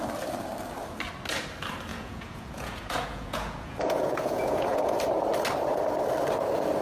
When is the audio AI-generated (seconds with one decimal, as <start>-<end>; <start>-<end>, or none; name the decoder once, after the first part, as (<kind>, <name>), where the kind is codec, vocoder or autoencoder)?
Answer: 1.9-5.0 (vocoder, Vocos)

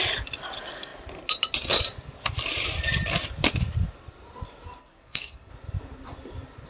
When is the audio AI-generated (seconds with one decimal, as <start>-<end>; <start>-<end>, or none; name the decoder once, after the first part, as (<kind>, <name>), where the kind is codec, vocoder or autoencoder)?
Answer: 4.8-5.5 (codec, SNAC)

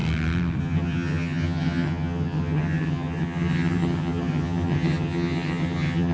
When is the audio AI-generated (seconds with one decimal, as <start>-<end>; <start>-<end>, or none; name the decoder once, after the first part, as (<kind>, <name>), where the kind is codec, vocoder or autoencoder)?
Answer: 0.6-6.1 (vocoder, HiFi-GAN)

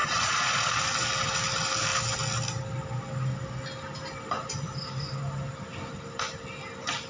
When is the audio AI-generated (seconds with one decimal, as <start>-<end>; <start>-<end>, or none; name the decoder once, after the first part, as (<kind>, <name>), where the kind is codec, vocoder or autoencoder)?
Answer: 0.0-0.8 (vocoder, Vocos)